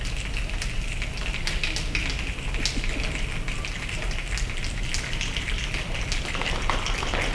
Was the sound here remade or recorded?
recorded